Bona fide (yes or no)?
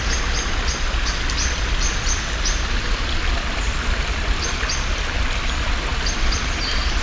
yes